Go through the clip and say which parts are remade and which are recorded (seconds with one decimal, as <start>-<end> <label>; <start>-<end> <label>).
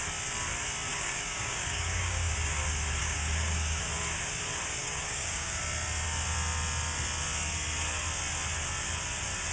0.0-0.9 recorded; 0.9-2.3 remade; 2.3-3.0 recorded; 3.0-3.8 remade; 3.8-4.8 recorded; 4.8-5.6 remade; 5.6-9.5 recorded